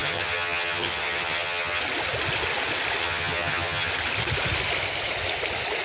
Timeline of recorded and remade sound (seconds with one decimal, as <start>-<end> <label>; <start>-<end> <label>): 0.0-1.8 remade; 1.8-3.0 recorded; 3.0-3.9 remade; 3.9-5.8 recorded